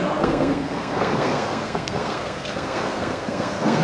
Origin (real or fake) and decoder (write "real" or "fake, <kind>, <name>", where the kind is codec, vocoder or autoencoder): fake, codec, SNAC